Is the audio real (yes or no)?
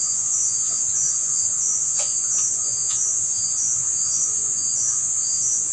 no